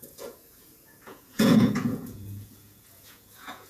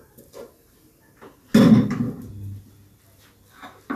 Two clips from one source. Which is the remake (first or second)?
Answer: first